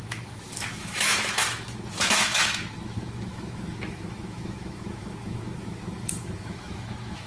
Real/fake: fake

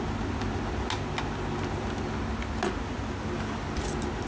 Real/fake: real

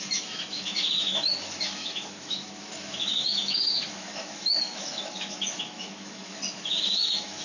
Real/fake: fake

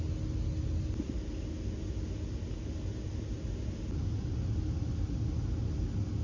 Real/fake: real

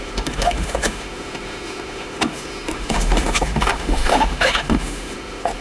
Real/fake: fake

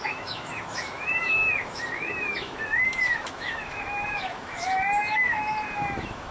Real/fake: fake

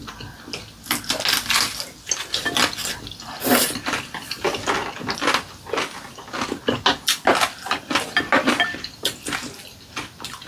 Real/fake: real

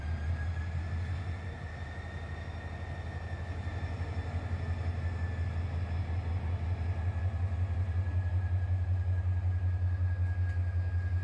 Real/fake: real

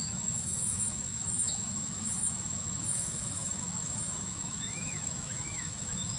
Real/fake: fake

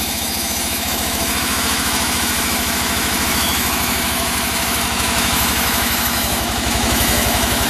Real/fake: fake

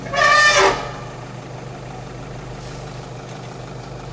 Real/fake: real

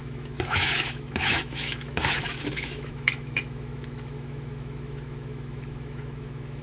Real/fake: fake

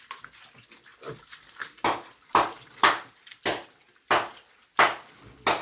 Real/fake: real